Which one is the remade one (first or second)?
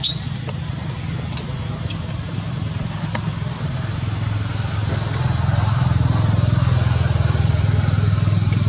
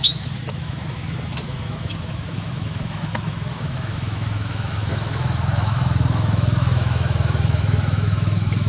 second